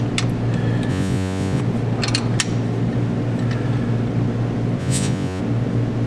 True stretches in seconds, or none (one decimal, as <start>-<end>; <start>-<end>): 0.0-0.9; 1.6-4.8; 5.4-6.1